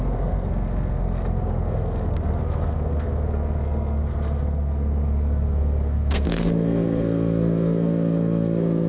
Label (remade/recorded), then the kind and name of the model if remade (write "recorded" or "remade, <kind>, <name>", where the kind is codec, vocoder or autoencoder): remade, codec, SNAC